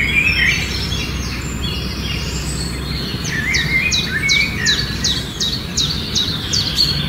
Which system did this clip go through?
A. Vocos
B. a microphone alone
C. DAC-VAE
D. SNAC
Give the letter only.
B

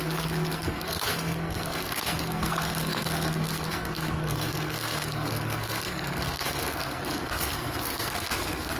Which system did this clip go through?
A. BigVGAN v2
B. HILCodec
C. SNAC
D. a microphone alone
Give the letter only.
C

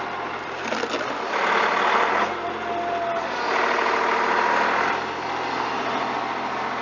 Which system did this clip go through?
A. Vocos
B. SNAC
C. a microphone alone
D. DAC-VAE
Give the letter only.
C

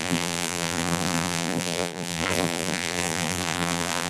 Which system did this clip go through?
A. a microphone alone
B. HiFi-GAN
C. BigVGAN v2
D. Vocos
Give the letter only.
C